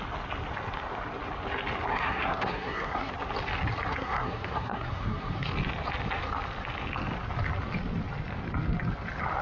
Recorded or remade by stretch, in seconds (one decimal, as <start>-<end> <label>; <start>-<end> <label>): 0.0-1.9 recorded; 1.9-3.1 remade; 3.1-3.9 recorded; 3.9-5.5 remade; 5.5-9.4 recorded